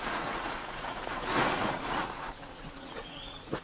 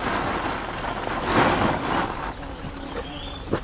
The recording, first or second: second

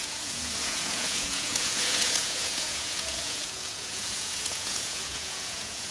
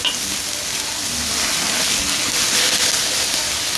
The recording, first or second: second